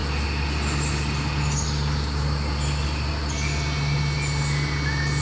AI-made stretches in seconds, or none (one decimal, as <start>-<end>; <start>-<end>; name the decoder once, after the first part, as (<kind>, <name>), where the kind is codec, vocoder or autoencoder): none